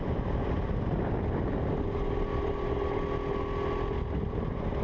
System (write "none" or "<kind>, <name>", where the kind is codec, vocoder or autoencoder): none